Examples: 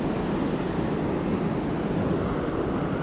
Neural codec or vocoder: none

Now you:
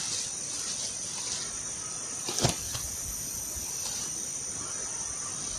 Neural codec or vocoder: none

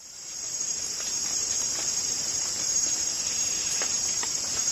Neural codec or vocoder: vocoder, BigVGAN v2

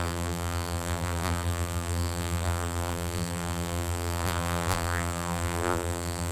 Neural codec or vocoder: vocoder, BigVGAN v2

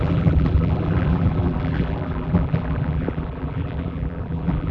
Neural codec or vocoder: vocoder, BigVGAN v2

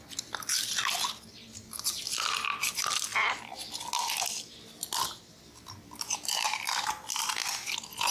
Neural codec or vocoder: none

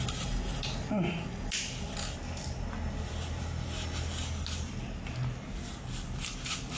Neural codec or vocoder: none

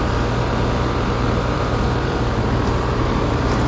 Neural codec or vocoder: vocoder, BigVGAN v2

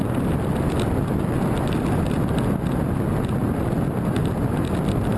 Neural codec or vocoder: none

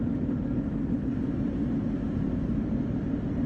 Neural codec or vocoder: none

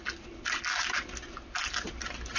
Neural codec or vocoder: none